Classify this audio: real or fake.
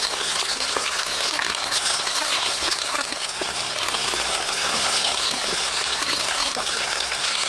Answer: fake